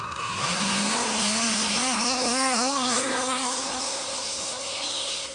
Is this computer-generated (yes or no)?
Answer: yes